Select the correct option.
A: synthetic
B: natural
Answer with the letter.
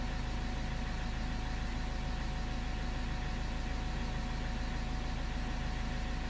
B